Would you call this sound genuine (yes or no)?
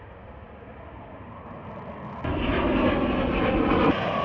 yes